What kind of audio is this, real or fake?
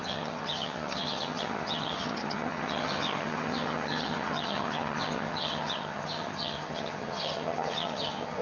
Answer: fake